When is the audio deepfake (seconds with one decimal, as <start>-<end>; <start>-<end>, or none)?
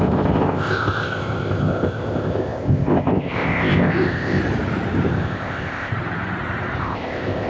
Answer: 0.0-4.4; 5.1-5.9; 6.8-7.5